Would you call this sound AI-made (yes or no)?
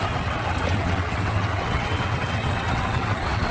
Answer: yes